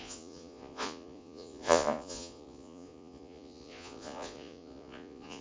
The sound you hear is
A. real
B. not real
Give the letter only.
B